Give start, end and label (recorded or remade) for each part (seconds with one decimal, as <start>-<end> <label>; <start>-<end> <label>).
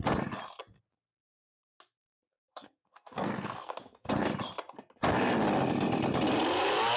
0.0-2.0 recorded; 2.0-4.1 remade; 4.1-7.0 recorded